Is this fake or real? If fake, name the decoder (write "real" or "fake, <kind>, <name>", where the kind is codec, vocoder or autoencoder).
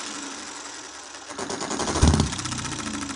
real